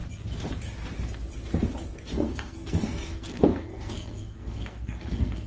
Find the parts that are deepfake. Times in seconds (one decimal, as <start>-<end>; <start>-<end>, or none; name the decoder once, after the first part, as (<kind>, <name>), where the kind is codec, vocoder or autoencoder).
2.1-5.5 (codec, SNAC)

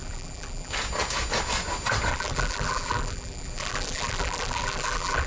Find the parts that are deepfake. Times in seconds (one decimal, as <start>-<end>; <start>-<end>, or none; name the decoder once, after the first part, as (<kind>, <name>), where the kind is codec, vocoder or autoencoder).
0.0-0.7 (vocoder, BigVGAN v2); 2.1-5.3